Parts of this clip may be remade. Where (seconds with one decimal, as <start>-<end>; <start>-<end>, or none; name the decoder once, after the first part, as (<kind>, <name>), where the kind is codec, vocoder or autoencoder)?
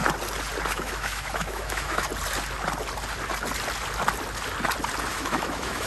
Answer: 0.7-2.1 (autoencoder, DAC-VAE); 5.1-5.9